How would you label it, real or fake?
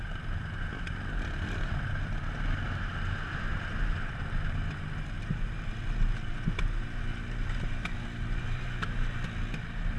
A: real